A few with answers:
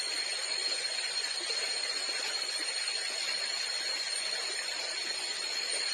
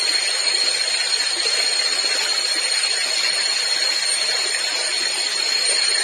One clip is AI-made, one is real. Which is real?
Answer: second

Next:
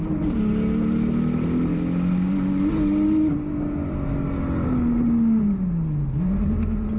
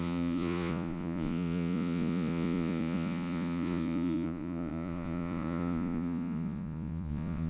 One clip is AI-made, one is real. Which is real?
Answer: first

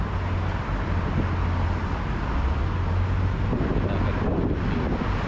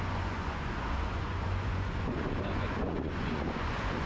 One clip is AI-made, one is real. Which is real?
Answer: first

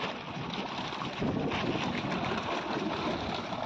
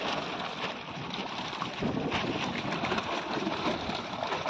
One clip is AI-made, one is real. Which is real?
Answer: first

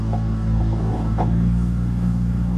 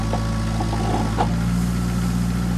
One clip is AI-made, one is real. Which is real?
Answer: second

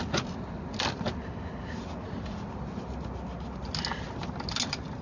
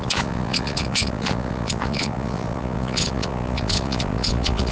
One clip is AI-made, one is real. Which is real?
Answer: first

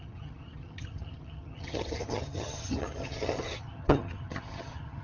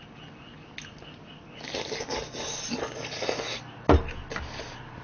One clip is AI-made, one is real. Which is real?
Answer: second